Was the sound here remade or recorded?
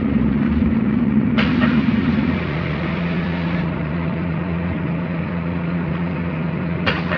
remade